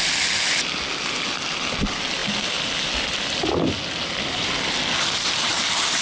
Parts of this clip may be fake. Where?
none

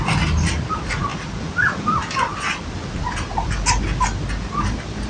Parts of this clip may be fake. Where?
none

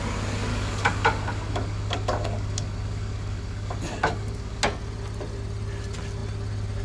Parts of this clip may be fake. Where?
0.5-4.6 (codec, DAC)